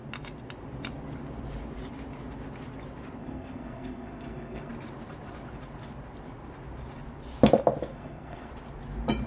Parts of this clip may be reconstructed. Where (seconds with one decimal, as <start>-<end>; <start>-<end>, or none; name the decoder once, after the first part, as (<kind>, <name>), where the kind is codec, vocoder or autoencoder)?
3.2-4.7 (codec, SNAC); 7.9-8.5